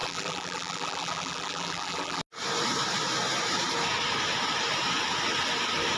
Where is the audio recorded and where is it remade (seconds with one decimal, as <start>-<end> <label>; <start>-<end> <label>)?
0.0-2.2 remade; 2.2-6.0 recorded